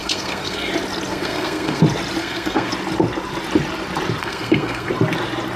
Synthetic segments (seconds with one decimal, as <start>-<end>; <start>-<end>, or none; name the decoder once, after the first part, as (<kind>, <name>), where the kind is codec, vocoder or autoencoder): 0.0-0.7 (codec, SNAC); 1.1-1.8; 2.2-2.7; 4.2-4.9

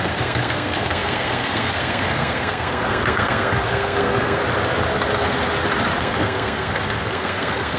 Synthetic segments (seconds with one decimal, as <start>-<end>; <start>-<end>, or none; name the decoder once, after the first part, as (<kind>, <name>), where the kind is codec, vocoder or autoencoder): 0.0-4.4 (codec, SNAC); 6.0-7.8

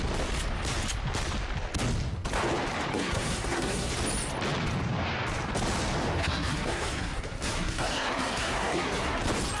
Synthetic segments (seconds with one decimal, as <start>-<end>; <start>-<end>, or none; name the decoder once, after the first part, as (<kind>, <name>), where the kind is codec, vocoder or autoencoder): 2.9-3.9 (codec, SNAC); 6.2-9.2

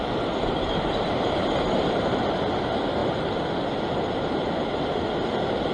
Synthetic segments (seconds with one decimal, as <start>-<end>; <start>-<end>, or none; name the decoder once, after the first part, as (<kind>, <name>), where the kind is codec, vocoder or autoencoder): none

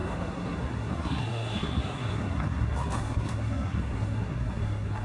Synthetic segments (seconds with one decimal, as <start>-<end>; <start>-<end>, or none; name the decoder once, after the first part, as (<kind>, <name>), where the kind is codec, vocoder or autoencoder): 0.0-5.0 (codec, SNAC)